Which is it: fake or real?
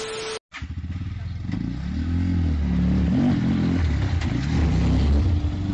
real